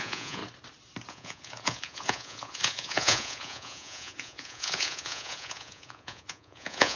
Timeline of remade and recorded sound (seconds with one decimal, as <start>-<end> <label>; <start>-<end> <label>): 0.0-0.4 remade; 0.4-1.1 recorded; 1.1-7.0 remade